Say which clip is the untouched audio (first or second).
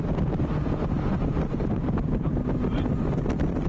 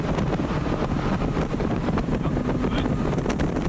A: first